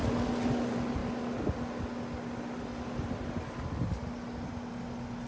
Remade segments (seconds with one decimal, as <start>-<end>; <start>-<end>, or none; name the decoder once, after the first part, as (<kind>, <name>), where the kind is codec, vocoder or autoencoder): none